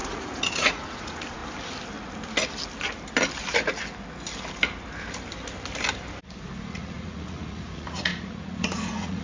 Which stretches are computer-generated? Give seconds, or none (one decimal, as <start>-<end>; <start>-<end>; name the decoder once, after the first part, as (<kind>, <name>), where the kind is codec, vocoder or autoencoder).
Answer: 0.0-1.4 (vocoder, Vocos); 6.7-9.2